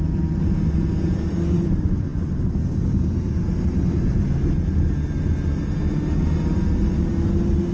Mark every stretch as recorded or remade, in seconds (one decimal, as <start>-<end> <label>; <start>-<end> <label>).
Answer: 0.0-7.7 recorded